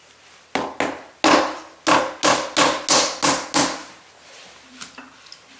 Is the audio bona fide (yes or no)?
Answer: yes